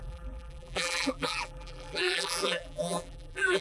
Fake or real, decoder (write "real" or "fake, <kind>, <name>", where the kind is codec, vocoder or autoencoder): fake, vocoder, BigVGAN v2